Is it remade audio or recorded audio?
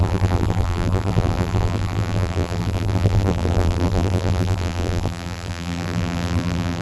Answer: remade